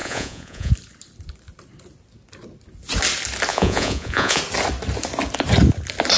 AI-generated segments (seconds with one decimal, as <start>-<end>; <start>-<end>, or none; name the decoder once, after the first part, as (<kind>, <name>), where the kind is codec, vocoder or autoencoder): 0.0-0.7 (vocoder, Vocos); 3.5-4.4